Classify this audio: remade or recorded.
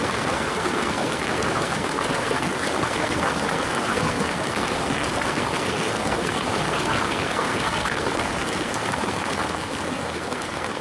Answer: remade